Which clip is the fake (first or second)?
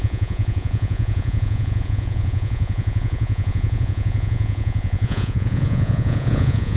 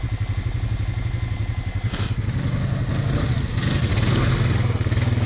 first